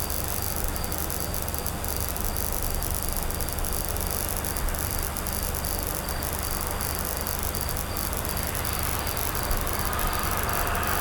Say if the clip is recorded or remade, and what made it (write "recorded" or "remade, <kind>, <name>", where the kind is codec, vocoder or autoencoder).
recorded